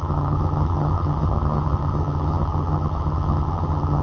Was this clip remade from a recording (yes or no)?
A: yes